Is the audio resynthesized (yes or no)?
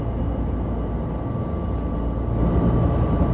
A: no